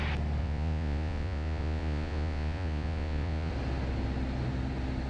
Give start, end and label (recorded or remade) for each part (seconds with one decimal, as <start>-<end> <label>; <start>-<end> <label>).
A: 0.0-0.4 recorded; 0.4-3.5 remade; 3.5-5.1 recorded